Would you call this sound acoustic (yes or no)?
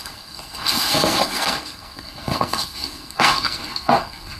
no